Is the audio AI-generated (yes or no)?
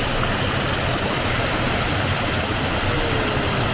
no